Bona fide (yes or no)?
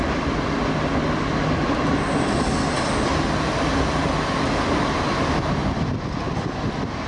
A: yes